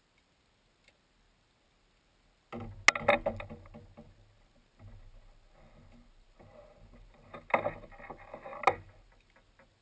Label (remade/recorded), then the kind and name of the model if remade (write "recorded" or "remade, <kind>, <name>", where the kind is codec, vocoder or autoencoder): recorded